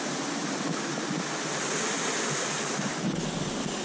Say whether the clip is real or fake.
real